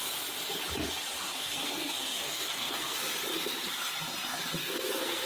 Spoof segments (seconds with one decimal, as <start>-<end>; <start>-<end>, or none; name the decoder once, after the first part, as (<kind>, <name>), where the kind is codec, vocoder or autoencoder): 1.3-3.0 (codec, SNAC); 4.6-5.3